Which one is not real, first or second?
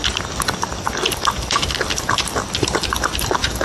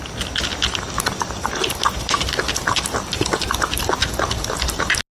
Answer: first